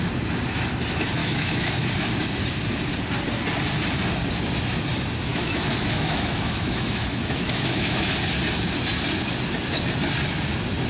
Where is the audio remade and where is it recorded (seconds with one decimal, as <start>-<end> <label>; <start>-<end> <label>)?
0.0-1.2 recorded; 1.2-1.9 remade; 1.9-5.3 recorded; 5.3-8.1 remade; 8.1-10.9 recorded